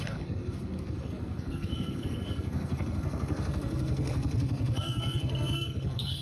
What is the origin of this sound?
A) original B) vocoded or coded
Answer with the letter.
B